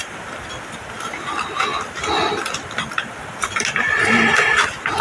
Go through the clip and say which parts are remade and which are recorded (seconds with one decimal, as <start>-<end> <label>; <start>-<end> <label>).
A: 0.0-5.0 recorded